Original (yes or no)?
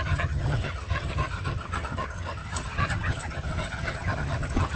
no